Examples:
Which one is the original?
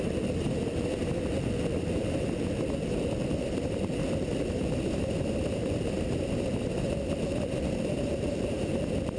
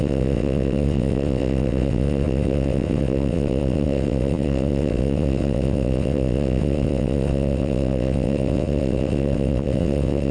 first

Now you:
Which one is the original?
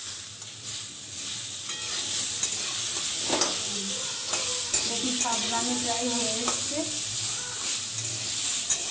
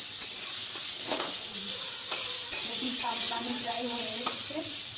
first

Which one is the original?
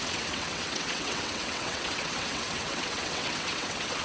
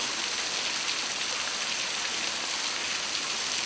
second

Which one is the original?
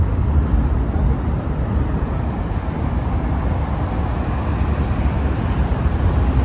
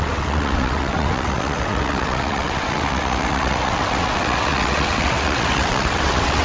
first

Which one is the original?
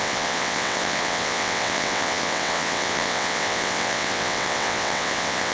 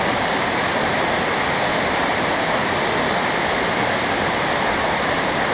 second